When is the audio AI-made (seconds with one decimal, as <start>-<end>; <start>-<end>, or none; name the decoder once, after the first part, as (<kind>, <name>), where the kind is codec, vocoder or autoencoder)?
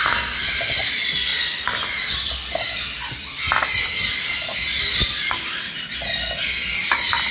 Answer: none